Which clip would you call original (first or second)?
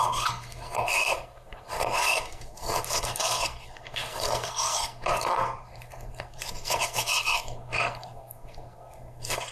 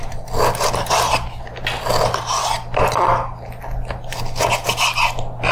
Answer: second